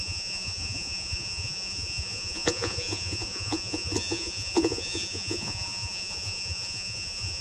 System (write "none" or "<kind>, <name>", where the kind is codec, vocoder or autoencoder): vocoder, Vocos